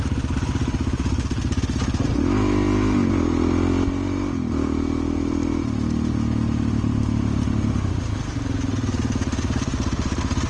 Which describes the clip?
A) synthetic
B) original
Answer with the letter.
B